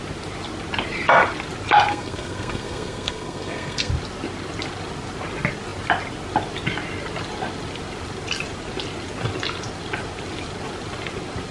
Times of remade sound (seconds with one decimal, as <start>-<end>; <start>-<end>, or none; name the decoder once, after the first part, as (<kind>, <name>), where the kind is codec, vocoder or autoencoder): 1.9-3.9 (codec, SNAC)

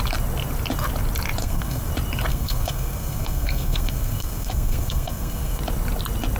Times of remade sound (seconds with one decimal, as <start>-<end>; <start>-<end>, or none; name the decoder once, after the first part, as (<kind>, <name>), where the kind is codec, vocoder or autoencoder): 1.4-1.9 (codec, SNAC); 2.3-5.6

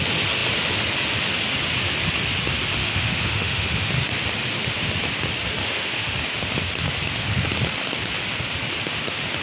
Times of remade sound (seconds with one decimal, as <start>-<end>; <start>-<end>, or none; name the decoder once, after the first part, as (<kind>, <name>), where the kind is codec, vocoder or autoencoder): 2.8-3.9 (autoencoder, DAC-VAE); 5.6-6.1

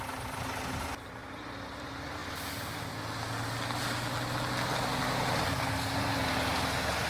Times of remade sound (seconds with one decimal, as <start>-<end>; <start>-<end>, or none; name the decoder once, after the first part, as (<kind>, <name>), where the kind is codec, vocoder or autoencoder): none

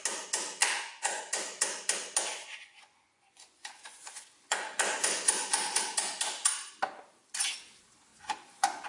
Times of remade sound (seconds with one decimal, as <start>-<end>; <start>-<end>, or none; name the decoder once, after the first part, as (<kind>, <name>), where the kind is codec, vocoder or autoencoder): 0.6-1.2 (vocoder, Vocos); 2.4-5.8; 8.1-8.9

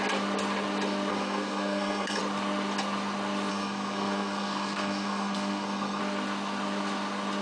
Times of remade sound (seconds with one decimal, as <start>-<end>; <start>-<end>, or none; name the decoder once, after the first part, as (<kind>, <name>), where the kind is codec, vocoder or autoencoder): 1.1-2.2 (codec, SNAC); 3.5-6.0

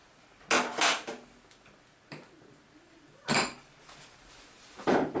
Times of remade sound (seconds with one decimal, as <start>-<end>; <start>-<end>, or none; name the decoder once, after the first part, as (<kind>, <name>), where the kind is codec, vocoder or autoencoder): 2.9-5.2 (vocoder, BigVGAN v2)